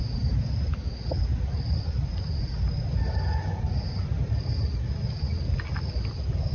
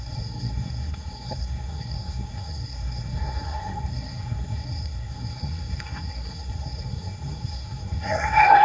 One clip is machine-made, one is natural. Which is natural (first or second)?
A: first